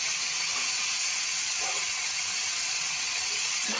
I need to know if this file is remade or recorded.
remade